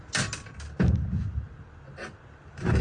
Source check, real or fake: real